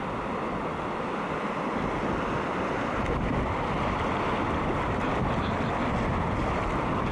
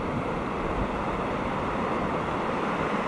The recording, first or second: first